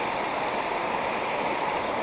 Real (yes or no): yes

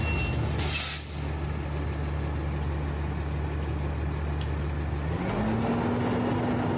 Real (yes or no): yes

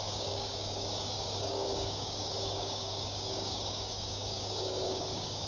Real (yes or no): no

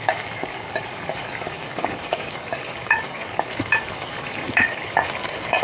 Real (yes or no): no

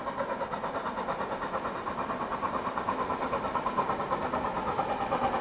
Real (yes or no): yes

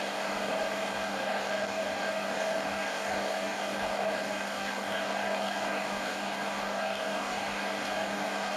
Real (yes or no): no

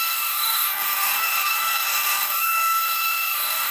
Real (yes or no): no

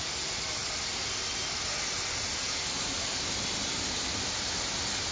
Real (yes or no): yes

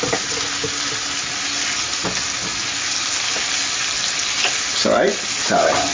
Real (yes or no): yes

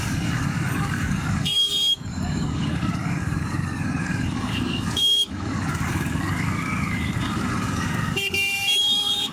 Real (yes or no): no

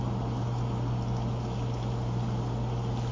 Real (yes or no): yes